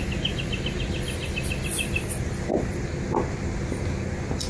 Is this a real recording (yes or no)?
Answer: yes